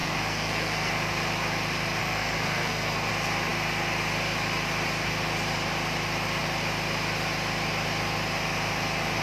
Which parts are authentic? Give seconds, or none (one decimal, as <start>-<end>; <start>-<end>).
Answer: 0.9-2.0; 3.1-9.2